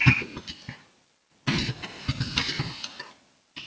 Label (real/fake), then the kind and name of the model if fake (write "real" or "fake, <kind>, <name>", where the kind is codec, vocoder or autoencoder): real